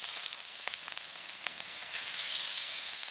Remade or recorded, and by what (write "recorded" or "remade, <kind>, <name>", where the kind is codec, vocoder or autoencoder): remade, codec, SNAC